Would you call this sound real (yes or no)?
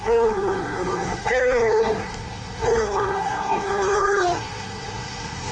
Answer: no